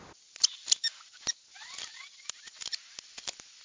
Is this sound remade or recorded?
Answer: recorded